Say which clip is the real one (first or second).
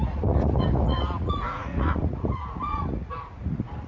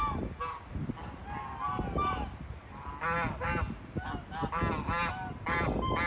second